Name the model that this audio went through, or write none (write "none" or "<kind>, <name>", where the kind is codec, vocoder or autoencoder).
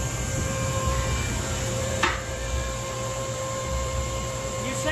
vocoder, BigVGAN v2